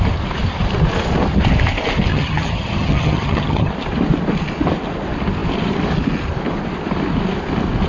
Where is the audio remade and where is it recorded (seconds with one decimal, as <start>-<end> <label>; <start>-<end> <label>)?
0.0-2.1 recorded; 2.1-3.7 remade; 3.7-7.9 recorded